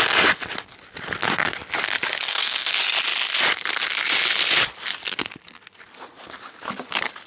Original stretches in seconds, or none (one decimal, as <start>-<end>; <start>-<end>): 0.0-2.3; 2.8-7.3